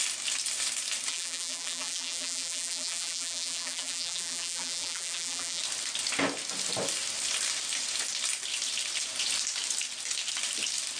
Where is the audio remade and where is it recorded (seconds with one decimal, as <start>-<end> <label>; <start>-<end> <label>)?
0.0-1.1 recorded; 1.1-5.6 remade; 5.6-11.0 recorded